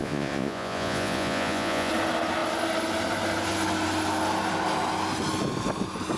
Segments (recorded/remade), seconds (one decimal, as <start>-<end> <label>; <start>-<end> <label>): 0.0-1.9 remade; 1.9-6.2 recorded